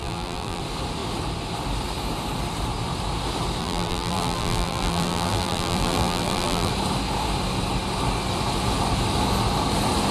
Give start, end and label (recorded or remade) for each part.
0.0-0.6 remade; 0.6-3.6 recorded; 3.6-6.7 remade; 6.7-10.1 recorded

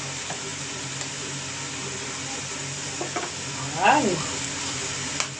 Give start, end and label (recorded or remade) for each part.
0.0-5.4 recorded

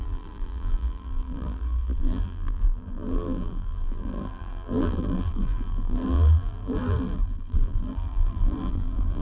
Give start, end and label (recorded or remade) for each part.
0.0-9.2 remade

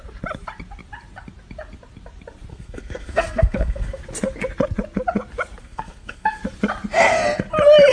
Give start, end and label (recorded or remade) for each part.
0.0-2.5 recorded; 2.5-4.0 remade; 4.0-5.6 recorded; 5.6-6.4 remade; 6.4-7.9 recorded

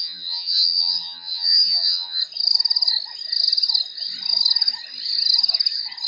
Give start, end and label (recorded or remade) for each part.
0.0-2.2 remade; 2.2-6.1 recorded

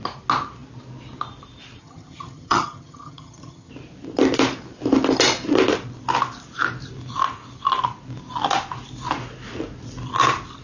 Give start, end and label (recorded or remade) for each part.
0.0-1.8 recorded; 1.8-3.7 remade; 3.7-10.6 recorded